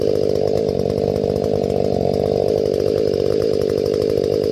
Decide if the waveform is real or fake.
real